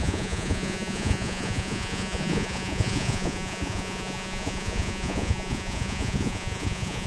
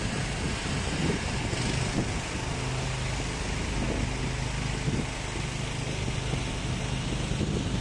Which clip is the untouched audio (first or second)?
second